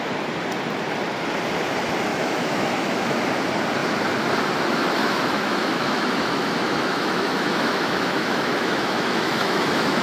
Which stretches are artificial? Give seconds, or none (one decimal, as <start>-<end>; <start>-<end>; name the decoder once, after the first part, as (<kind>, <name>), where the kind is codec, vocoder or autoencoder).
2.1-3.2 (autoencoder, DAC-VAE); 5.0-10.0